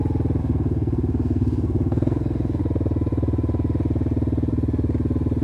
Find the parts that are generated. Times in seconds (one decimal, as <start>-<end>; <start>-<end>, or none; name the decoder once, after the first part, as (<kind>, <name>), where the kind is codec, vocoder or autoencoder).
0.4-2.6 (codec, SNAC)

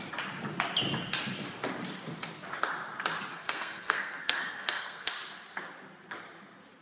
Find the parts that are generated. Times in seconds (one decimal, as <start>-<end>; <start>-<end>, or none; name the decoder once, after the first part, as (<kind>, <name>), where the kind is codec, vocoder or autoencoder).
3.3-5.1 (codec, SNAC)

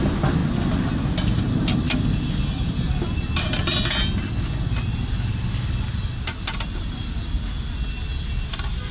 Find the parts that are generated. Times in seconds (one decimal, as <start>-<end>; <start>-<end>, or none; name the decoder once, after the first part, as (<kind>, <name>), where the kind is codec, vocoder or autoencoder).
none

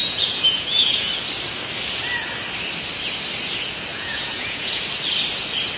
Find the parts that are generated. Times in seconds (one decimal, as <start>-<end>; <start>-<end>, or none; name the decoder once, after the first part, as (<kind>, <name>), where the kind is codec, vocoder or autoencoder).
0.0-1.1 (vocoder, Vocos); 3.9-4.8